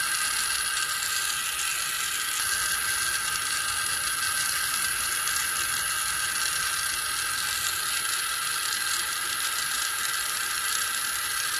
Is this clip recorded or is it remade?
recorded